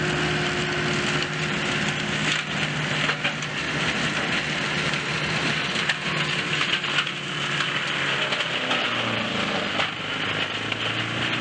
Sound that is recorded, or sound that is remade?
recorded